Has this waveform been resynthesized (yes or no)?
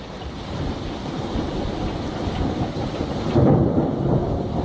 no